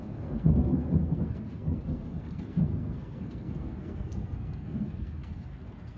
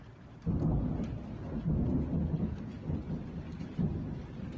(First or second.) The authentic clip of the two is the second